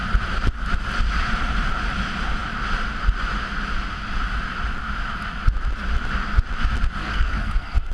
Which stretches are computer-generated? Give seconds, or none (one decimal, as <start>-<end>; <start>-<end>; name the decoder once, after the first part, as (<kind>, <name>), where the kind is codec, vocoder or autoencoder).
7.0-7.9 (codec, SNAC)